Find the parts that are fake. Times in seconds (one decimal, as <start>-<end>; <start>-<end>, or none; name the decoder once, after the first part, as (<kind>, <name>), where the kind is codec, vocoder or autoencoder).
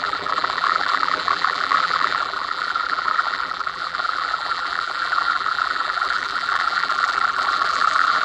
0.0-8.2 (vocoder, BigVGAN v2)